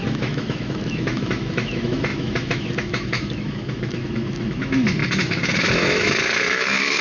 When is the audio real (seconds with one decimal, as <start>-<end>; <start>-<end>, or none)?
none